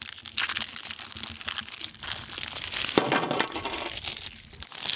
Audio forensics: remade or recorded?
recorded